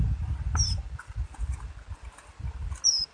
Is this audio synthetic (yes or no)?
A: no